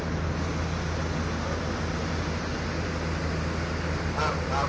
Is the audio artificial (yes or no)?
no